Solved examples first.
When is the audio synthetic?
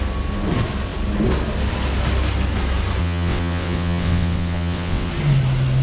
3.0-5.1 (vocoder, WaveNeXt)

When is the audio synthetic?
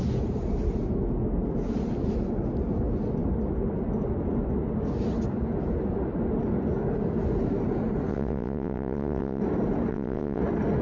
8.1-9.4 (vocoder, WaveNeXt); 9.9-10.4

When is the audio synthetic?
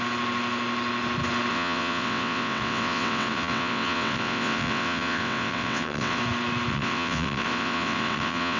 1.5-6.2 (vocoder, WaveNeXt); 6.7-8.6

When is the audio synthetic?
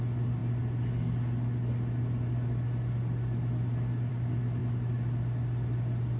none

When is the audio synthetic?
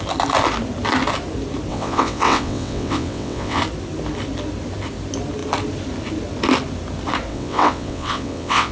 1.7-3.6 (vocoder, WaveNeXt); 7.3-8.7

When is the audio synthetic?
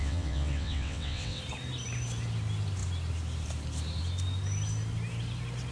0.0-1.4 (vocoder, WaveNeXt)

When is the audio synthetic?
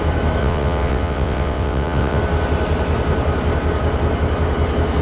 0.4-2.2 (vocoder, WaveNeXt)